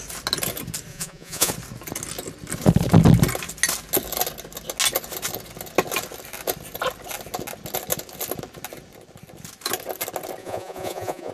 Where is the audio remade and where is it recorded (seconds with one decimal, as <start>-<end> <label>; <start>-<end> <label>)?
0.0-0.9 recorded; 0.9-1.5 remade; 1.5-10.4 recorded; 10.4-11.3 remade